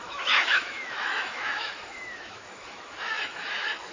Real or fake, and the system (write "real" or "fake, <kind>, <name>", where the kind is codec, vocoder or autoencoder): fake, autoencoder, DAC-VAE